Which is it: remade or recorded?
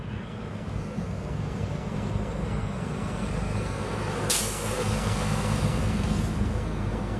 remade